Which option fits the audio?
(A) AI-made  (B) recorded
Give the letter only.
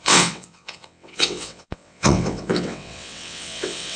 A